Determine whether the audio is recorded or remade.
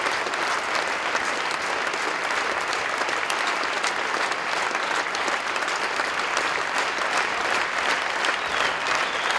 recorded